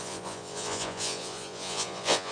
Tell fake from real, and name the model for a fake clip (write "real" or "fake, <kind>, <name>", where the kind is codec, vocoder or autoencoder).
fake, vocoder, Vocos